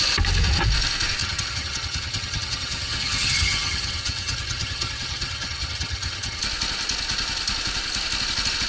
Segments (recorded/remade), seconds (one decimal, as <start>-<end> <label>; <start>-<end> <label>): 0.0-1.2 recorded; 1.2-6.4 remade; 6.4-8.7 recorded